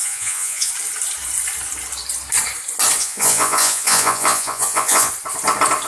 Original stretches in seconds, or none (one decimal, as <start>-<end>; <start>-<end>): 0.7-3.0; 5.1-5.9